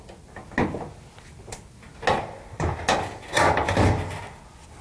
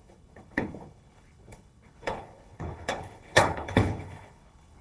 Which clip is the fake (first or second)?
second